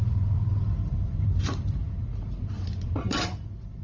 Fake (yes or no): yes